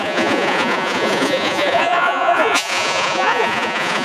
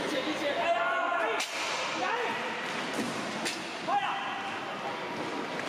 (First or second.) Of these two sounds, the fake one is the first